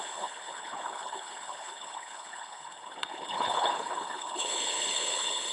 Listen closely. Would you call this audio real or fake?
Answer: fake